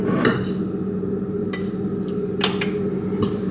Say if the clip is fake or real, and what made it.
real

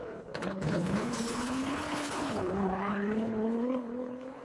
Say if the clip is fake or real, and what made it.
fake, codec, HILCodec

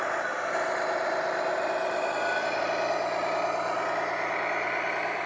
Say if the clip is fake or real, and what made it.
real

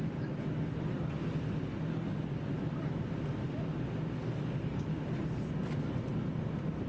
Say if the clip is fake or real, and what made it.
real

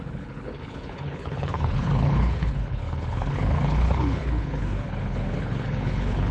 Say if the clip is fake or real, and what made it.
fake, codec, HILCodec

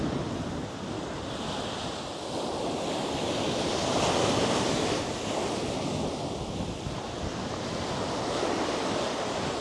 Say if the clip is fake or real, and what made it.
real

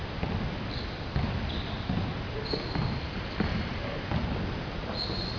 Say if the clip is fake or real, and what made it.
real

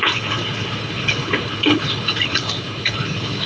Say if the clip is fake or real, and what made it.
fake, codec, HILCodec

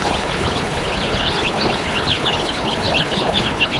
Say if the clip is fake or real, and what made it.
fake, codec, HILCodec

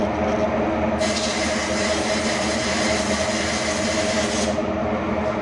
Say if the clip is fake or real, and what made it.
real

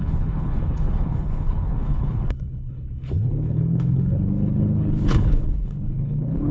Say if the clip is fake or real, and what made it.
fake, codec, HILCodec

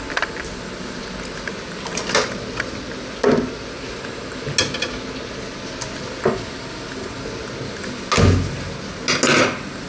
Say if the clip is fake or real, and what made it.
real